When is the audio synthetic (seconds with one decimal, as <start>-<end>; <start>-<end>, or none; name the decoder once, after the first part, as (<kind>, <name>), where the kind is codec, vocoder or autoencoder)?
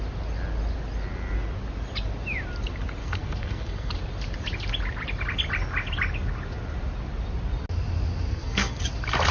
3.0-3.9 (codec, SNAC); 8.3-8.8